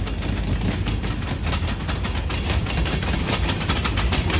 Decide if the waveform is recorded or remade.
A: recorded